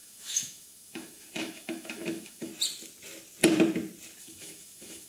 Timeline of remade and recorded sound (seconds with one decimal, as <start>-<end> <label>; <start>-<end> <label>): 0.0-2.5 remade; 2.5-4.2 recorded; 4.2-5.1 remade